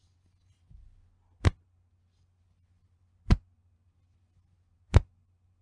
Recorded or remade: recorded